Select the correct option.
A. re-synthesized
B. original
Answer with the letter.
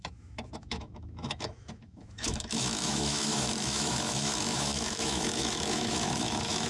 A